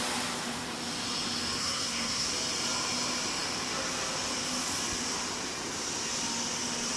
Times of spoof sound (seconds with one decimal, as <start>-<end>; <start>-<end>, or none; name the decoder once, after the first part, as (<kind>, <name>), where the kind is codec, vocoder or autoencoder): 1.6-2.3 (codec, SNAC)